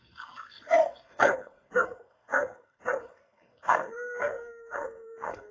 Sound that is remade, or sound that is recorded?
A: remade